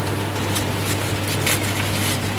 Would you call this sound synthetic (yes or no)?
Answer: no